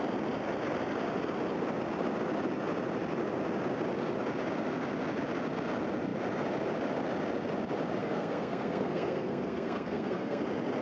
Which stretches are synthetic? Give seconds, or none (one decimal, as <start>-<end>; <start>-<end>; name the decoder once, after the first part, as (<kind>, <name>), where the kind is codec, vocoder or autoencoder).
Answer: 8.0-10.4 (codec, SNAC)